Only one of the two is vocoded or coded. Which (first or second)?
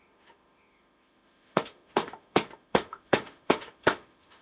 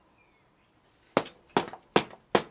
first